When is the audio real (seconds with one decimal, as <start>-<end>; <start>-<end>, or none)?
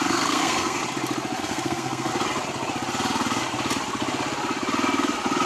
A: 0.8-1.4; 2.1-5.5